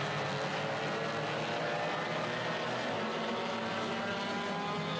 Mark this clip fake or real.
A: real